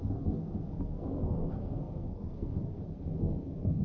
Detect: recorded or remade remade